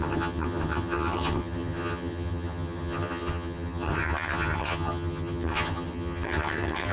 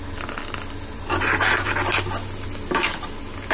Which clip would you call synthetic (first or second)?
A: first